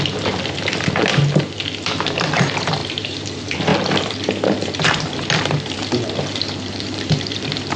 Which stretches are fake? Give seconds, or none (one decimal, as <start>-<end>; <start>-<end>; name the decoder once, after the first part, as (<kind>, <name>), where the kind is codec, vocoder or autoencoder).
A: 0.0-1.1 (vocoder, BigVGAN v2); 2.0-7.8